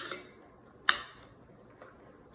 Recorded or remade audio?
recorded